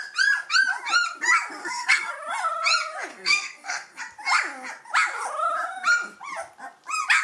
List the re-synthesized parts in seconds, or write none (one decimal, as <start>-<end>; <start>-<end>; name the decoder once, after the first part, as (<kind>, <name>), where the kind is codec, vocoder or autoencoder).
1.6-2.1 (codec, SNAC); 3.1-4.0